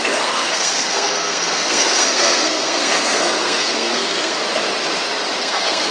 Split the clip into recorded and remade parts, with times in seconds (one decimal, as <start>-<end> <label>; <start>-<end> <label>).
0.0-4.4 remade; 4.4-5.4 recorded; 5.4-5.9 remade